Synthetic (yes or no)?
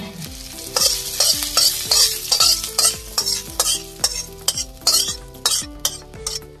no